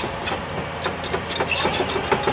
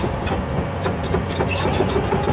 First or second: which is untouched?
first